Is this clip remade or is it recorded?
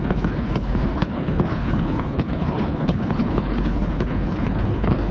remade